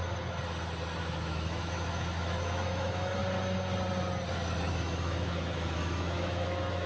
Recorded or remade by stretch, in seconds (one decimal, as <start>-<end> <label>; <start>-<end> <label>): 0.0-1.0 recorded; 1.0-3.2 remade; 3.2-4.7 recorded; 4.7-6.9 remade

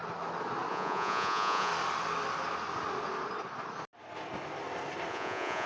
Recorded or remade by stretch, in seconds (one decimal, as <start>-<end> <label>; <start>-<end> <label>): 0.0-0.7 recorded; 0.7-1.7 remade; 1.7-5.1 recorded; 5.1-5.7 remade

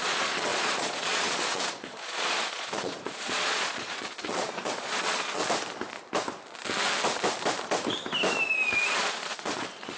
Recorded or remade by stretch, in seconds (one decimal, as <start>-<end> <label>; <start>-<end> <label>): 0.0-5.4 remade; 5.4-9.0 recorded; 9.0-10.0 remade